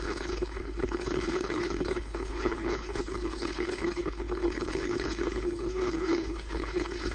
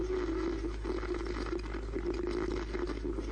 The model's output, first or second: first